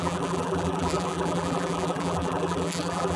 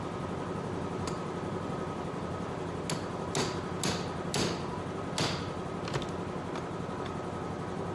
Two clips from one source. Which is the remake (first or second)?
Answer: first